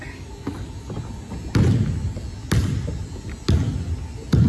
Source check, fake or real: real